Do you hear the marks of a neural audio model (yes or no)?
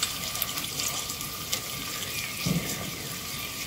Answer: no